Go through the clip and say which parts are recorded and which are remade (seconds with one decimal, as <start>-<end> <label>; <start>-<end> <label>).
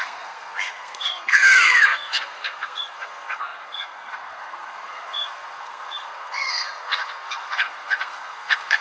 0.0-8.8 remade